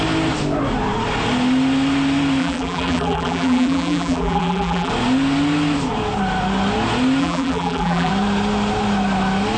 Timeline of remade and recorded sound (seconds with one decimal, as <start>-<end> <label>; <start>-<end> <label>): 0.0-2.4 recorded; 2.4-4.9 remade; 4.9-7.2 recorded; 7.2-8.1 remade; 8.1-9.6 recorded